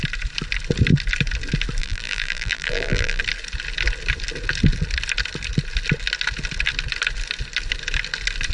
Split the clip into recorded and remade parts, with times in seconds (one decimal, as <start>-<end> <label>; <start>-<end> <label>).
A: 0.0-1.8 recorded; 1.8-3.2 remade; 3.2-8.5 recorded